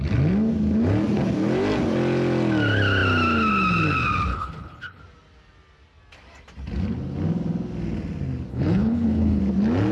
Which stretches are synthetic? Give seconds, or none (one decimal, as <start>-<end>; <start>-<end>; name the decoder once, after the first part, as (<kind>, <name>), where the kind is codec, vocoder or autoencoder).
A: 4.3-5.0 (codec, HILCodec); 8.5-9.4